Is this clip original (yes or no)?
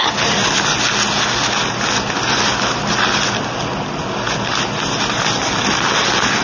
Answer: yes